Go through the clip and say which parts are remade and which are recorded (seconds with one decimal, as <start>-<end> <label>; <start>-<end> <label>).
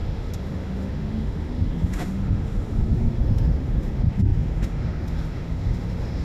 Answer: 0.0-6.2 remade